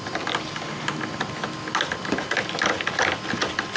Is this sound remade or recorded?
recorded